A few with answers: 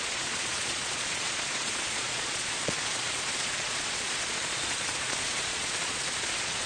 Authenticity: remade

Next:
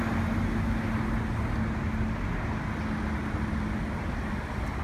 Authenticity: recorded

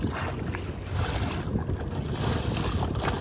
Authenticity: recorded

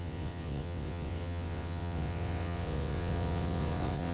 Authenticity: remade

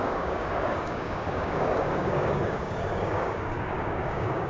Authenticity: remade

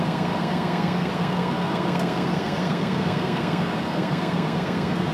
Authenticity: remade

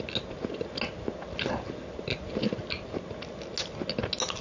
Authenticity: recorded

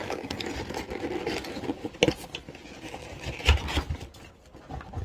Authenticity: recorded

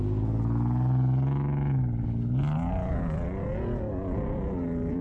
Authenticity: recorded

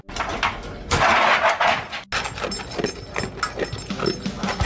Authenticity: recorded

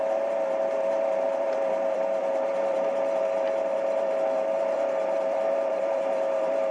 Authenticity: remade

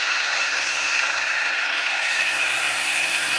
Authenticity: remade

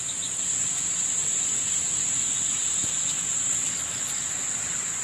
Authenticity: recorded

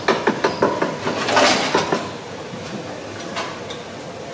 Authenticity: recorded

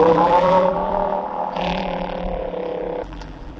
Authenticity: remade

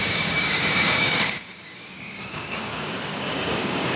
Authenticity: remade